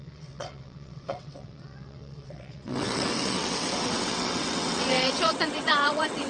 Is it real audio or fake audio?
fake